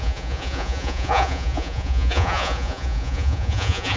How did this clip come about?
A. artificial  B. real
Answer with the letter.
A